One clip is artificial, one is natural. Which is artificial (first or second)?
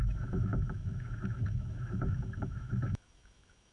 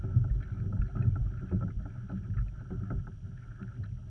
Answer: first